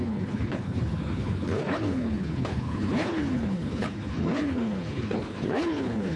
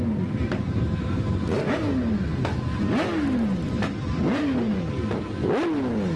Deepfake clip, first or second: first